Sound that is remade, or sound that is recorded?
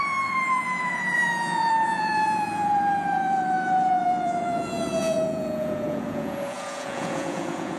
remade